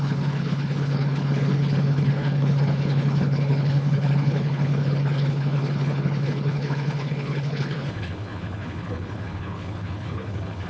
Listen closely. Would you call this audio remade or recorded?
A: remade